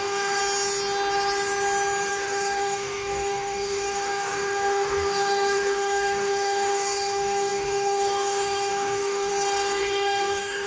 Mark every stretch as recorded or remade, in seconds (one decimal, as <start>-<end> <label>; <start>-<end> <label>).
0.0-0.4 remade; 0.4-2.1 recorded; 2.1-9.3 remade; 9.3-9.8 recorded; 9.8-10.7 remade